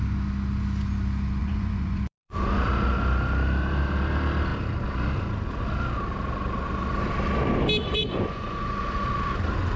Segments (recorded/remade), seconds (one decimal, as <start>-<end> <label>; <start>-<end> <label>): 0.0-1.4 recorded; 1.4-2.5 remade; 2.5-7.8 recorded; 7.8-8.8 remade; 8.8-9.8 recorded